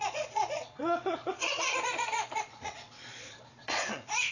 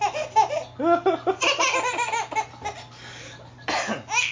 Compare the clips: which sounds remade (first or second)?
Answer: first